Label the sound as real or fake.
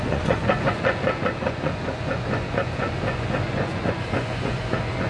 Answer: fake